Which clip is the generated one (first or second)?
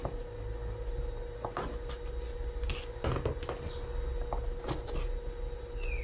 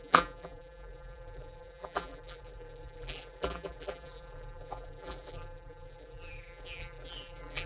second